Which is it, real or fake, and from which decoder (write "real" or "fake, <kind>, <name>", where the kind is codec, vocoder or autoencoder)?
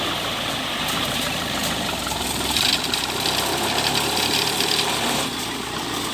fake, vocoder, BigVGAN v2